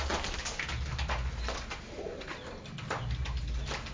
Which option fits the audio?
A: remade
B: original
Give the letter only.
B